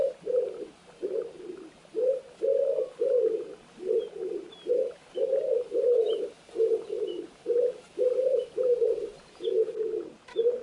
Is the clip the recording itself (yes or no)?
yes